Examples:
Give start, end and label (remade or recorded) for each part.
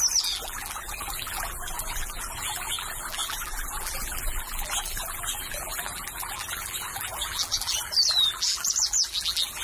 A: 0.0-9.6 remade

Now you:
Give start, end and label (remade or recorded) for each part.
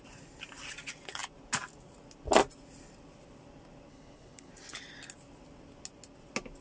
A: 0.0-3.9 recorded; 3.9-4.5 remade; 4.5-6.6 recorded